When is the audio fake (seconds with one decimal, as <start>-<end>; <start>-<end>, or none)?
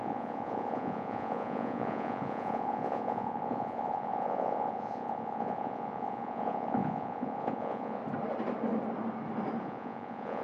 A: 0.0-8.0; 9.6-10.4